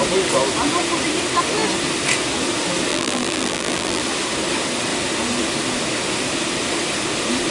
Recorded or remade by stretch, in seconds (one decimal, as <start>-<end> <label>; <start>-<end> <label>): 0.0-2.9 recorded; 2.9-4.0 remade; 4.0-7.5 recorded